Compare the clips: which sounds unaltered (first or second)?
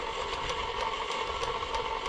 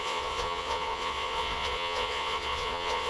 first